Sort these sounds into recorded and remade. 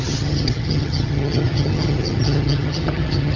remade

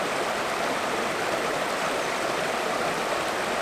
recorded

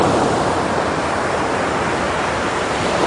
recorded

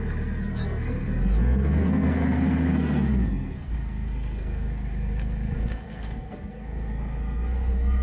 remade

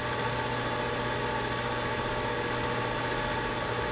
recorded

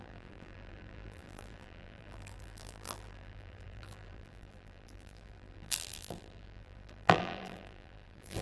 remade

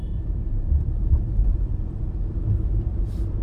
remade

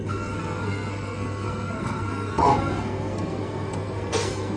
remade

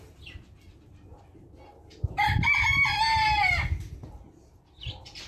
recorded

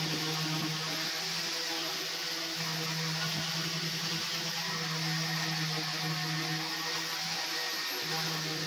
recorded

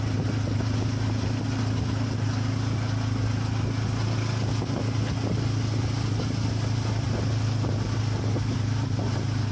recorded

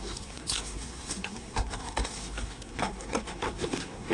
remade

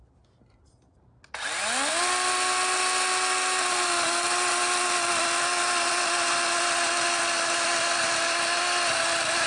recorded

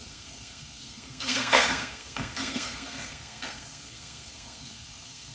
remade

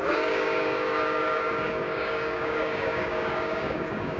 remade